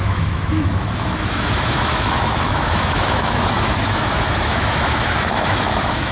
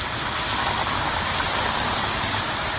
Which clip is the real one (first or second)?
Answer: second